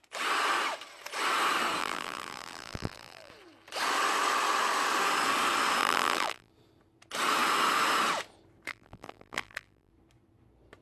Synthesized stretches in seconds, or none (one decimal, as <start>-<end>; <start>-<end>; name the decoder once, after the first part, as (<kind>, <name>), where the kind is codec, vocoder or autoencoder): 1.8-3.3 (vocoder, BigVGAN v2); 5.8-6.5; 8.7-9.9